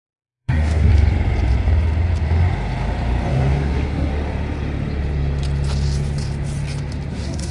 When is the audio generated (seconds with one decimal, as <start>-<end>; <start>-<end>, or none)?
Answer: 0.0-0.9; 3.3-4.1; 7.1-7.5